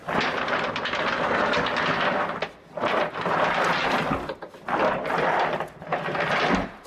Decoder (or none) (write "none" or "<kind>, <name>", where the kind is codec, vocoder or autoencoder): none